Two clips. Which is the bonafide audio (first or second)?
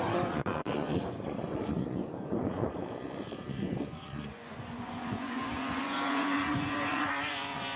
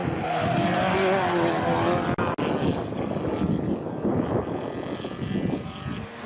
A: second